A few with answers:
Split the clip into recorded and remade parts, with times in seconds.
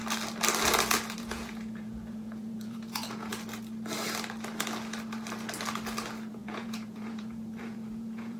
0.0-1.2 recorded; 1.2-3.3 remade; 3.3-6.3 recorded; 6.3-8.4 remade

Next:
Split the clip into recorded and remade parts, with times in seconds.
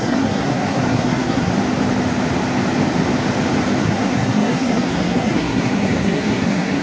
0.0-1.5 remade; 1.5-3.8 recorded; 3.8-6.8 remade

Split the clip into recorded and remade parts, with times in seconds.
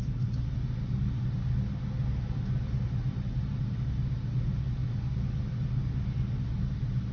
0.0-7.1 recorded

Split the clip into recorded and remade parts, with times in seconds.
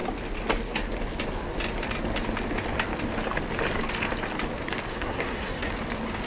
0.0-4.9 recorded; 4.9-5.7 remade; 5.7-6.3 recorded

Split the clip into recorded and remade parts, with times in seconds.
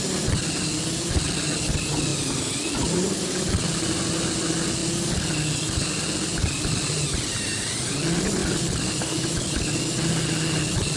0.0-11.0 recorded